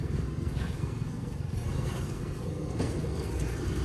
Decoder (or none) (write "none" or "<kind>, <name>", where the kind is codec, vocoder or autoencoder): codec, SNAC